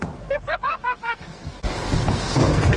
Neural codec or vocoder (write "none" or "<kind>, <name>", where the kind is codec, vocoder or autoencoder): codec, SNAC